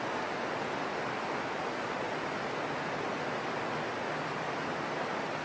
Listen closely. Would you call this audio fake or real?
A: real